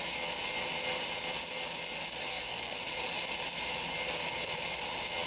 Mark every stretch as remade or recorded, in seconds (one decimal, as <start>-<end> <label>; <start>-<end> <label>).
0.0-2.3 recorded; 2.3-2.8 remade; 2.8-5.3 recorded